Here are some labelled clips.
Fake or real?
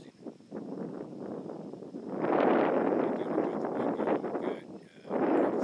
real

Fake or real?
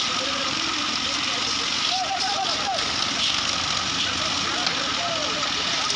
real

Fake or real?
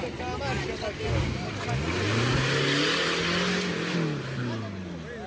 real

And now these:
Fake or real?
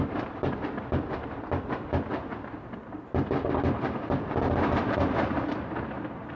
real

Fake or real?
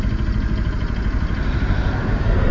real